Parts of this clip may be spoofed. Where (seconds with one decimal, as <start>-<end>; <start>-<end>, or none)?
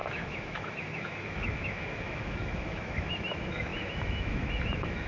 0.0-5.1